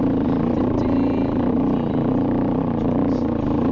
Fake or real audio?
real